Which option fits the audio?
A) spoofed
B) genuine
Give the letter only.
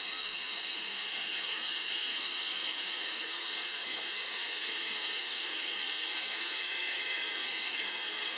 A